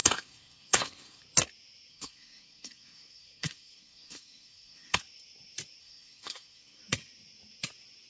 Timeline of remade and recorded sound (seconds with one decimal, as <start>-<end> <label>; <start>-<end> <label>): 0.0-1.2 remade; 1.2-1.9 recorded; 1.9-5.0 remade; 5.0-5.8 recorded; 5.8-6.8 remade; 6.8-8.1 recorded